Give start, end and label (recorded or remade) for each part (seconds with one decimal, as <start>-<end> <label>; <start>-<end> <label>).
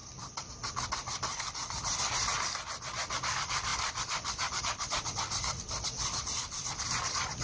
0.0-2.0 remade; 2.0-3.3 recorded; 3.3-7.4 remade